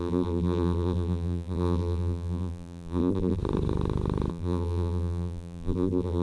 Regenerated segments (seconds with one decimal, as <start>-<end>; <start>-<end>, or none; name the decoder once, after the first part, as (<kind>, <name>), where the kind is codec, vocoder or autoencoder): 0.0-3.4 (vocoder, BigVGAN v2); 4.3-6.2